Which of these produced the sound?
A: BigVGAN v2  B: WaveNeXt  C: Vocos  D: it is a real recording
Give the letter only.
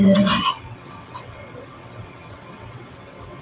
B